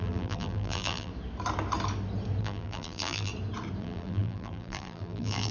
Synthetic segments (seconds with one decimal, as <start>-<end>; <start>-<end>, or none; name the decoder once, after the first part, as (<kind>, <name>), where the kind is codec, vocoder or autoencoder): 0.0-1.1 (vocoder, BigVGAN v2); 2.4-3.3; 3.8-5.5